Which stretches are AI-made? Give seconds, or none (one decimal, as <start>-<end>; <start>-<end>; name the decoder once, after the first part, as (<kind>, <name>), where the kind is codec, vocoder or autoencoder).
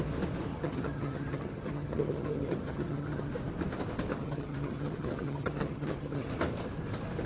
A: 0.5-3.3 (vocoder, HiFi-GAN); 4.1-6.3